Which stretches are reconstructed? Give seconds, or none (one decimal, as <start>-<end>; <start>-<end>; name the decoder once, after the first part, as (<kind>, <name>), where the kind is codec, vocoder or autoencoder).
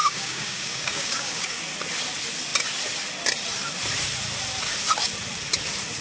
0.0-1.6 (codec, DAC)